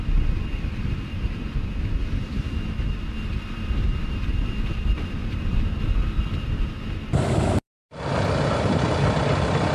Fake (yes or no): yes